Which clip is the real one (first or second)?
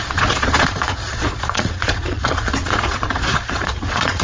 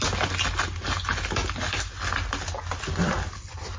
second